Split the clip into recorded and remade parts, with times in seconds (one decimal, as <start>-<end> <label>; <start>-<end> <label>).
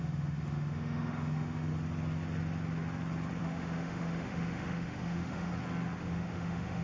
0.0-1.7 remade; 1.7-3.4 recorded; 3.4-5.5 remade; 5.5-6.0 recorded; 6.0-6.8 remade